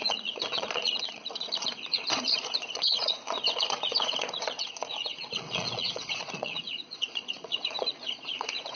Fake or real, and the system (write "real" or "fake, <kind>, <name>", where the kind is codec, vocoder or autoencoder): fake, vocoder, Vocos